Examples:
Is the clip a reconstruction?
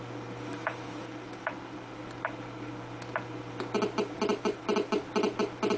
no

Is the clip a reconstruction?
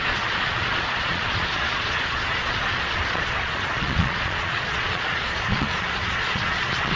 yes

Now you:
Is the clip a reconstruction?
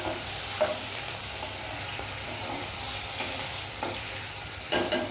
yes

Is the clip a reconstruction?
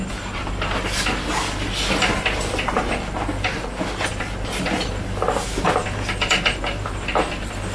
no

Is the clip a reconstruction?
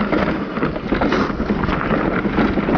no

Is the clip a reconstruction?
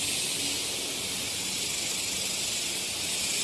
no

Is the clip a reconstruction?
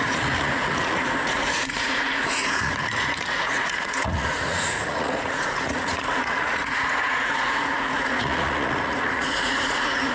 yes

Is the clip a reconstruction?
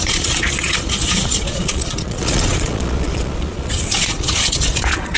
yes